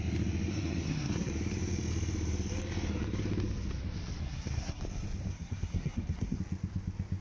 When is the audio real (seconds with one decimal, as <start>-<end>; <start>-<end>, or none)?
0.0-0.5; 1.3-4.2; 4.8-5.3; 6.4-7.2